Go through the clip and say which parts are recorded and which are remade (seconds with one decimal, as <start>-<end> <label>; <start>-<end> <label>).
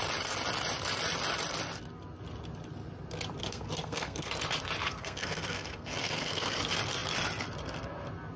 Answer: 0.0-3.4 recorded; 3.4-4.3 remade; 4.3-4.8 recorded; 4.8-6.6 remade; 6.6-8.4 recorded